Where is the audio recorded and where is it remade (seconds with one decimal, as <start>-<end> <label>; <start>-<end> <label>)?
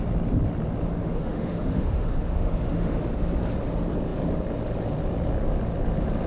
0.0-1.0 recorded; 1.0-3.0 remade; 3.0-6.3 recorded